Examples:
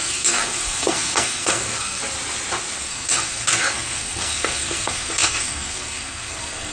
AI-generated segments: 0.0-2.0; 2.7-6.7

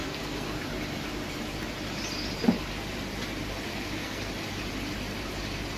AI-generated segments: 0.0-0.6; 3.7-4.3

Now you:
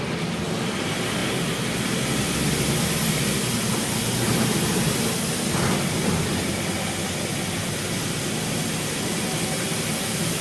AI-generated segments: none

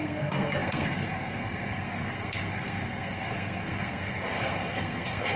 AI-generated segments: 0.0-5.4

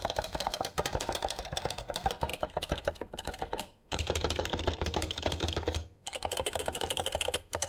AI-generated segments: 0.0-7.7

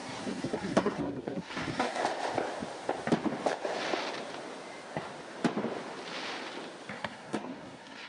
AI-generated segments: 0.0-2.0; 6.9-8.1